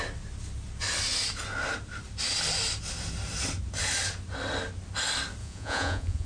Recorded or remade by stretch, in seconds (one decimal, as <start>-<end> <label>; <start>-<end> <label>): 0.0-5.4 recorded; 5.4-6.3 remade